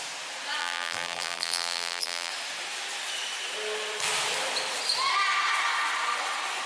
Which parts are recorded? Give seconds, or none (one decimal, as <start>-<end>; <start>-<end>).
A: 0.0-0.6; 2.3-6.7